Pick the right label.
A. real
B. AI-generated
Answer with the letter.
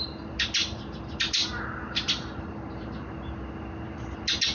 A